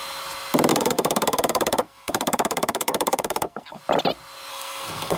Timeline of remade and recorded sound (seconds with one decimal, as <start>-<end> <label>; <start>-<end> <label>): 0.0-0.7 recorded; 0.7-3.8 remade; 3.8-4.5 recorded; 4.5-5.2 remade